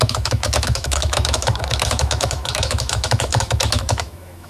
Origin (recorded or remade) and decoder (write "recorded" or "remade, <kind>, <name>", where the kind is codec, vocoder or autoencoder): remade, autoencoder, DAC-VAE